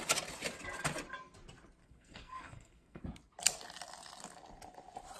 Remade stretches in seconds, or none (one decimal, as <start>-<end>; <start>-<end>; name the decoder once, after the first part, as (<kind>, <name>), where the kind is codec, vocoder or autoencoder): 1.8-3.0 (codec, SNAC)